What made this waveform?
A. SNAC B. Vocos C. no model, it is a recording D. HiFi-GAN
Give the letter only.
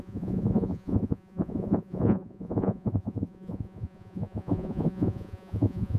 B